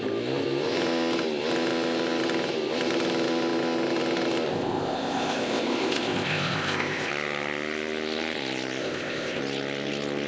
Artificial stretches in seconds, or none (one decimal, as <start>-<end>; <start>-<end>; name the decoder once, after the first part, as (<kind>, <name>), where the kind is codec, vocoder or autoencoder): 4.5-7.1 (codec, ZipCodec); 8.8-9.4